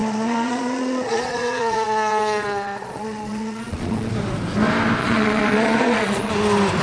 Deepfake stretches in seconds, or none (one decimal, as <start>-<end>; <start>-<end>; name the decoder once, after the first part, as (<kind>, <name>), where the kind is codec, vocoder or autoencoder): 0.0-4.1 (vocoder, Vocos); 5.0-6.3